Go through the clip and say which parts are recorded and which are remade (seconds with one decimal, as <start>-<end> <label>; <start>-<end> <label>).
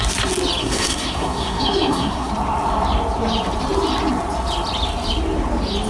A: 0.0-0.6 recorded; 0.6-2.3 remade; 2.3-5.9 recorded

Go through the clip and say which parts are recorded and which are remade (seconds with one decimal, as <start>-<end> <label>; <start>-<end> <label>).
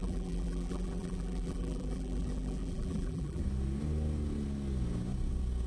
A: 0.0-3.4 remade; 3.4-5.7 recorded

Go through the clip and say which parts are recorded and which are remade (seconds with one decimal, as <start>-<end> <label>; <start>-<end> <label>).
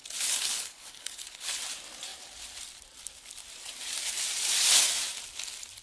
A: 0.0-1.6 remade; 1.6-5.8 recorded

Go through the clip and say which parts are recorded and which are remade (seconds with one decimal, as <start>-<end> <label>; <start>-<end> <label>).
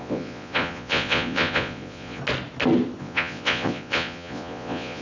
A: 0.0-2.2 remade; 2.2-3.0 recorded; 3.0-5.0 remade